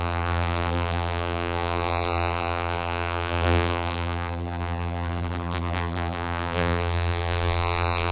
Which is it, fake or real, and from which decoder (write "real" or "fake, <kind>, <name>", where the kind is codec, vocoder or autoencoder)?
fake, vocoder, BigVGAN v2